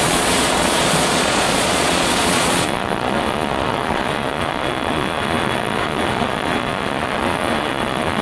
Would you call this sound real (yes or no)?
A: no